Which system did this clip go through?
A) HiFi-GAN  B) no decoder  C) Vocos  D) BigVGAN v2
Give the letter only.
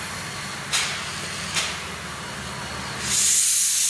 B